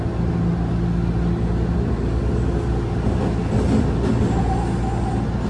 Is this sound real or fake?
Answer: real